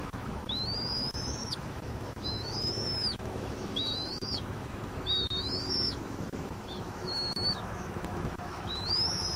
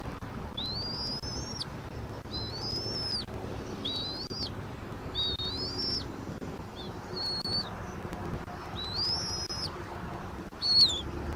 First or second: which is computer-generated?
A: first